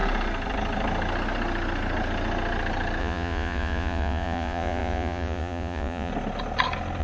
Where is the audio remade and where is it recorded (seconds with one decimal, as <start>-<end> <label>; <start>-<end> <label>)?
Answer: 0.0-3.0 recorded; 3.0-6.1 remade; 6.1-7.0 recorded